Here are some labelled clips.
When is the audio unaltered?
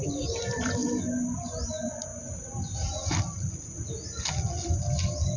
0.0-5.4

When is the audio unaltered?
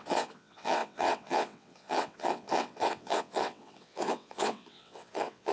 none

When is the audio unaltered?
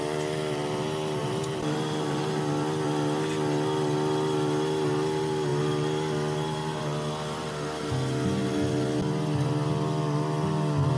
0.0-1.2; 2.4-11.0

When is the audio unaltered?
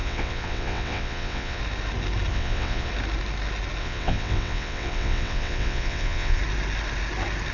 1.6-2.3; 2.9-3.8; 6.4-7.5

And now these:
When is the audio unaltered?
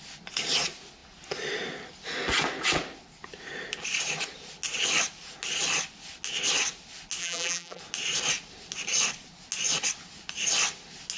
0.0-7.2; 7.8-11.2